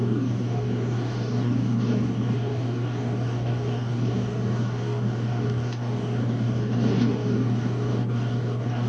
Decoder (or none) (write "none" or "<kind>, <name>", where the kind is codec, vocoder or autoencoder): codec, DAC